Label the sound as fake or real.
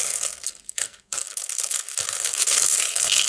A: fake